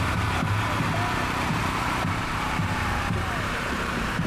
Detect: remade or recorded remade